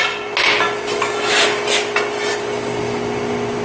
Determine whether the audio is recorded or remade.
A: recorded